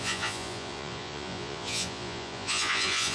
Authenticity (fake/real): fake